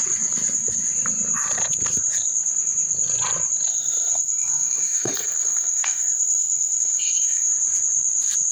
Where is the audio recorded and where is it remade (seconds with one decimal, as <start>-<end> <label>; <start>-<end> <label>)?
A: 0.0-3.7 recorded; 3.7-7.5 remade; 7.5-8.5 recorded